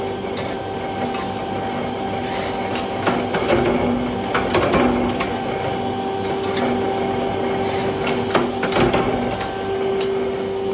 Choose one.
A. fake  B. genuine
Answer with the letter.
B